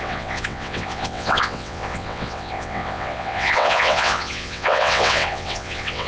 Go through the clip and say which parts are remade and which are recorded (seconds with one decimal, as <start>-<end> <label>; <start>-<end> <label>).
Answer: 0.0-6.1 remade